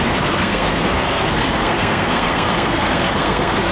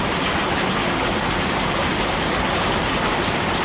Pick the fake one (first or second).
first